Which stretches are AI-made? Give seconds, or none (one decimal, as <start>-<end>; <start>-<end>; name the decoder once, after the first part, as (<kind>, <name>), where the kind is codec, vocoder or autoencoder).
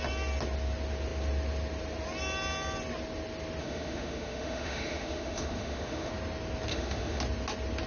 3.6-6.1 (autoencoder, DAC-VAE); 6.7-7.2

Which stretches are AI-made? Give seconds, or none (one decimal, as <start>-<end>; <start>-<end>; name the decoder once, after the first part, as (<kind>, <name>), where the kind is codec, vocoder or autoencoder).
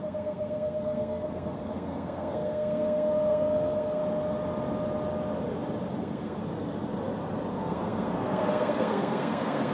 0.0-4.0 (codec, SNAC); 5.9-6.4; 7.5-9.7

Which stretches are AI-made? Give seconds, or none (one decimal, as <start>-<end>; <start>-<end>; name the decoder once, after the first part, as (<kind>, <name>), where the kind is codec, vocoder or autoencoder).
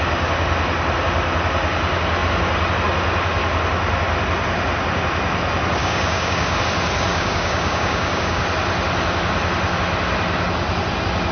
5.8-6.6 (codec, DAC); 7.1-8.4